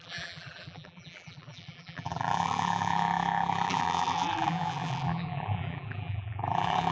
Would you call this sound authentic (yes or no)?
no